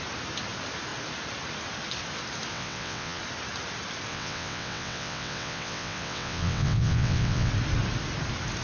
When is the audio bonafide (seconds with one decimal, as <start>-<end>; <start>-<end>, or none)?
0.0-2.5; 3.2-4.1; 7.5-8.6